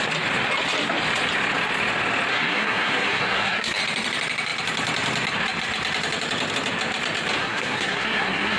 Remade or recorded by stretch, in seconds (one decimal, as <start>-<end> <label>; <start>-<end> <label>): 0.0-2.3 recorded; 2.3-3.8 remade; 3.8-7.4 recorded; 7.4-8.6 remade